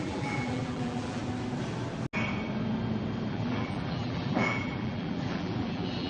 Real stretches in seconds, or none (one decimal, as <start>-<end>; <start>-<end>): 1.2-3.3